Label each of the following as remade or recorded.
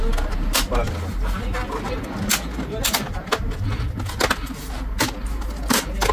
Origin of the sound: recorded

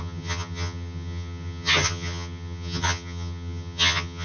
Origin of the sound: remade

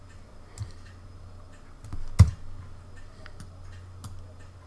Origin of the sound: recorded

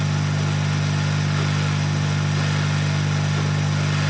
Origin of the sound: recorded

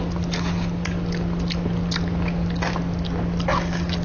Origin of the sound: recorded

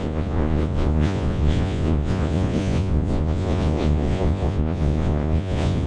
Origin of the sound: remade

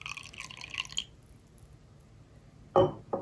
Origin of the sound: recorded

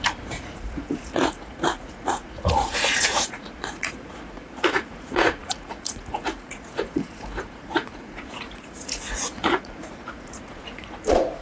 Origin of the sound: remade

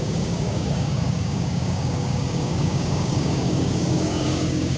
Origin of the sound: remade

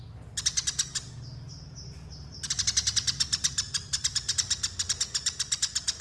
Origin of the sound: recorded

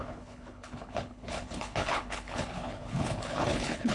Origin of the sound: remade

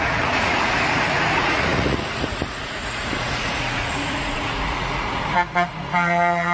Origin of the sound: remade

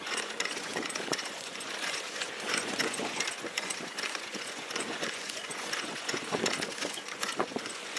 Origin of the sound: remade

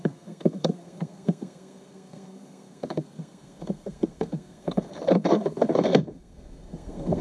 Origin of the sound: remade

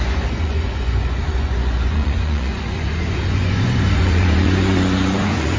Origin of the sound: remade